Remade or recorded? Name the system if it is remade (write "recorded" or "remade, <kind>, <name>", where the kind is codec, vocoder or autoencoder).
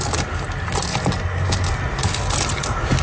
recorded